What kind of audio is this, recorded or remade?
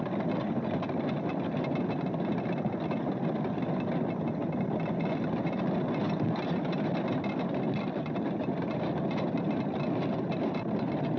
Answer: recorded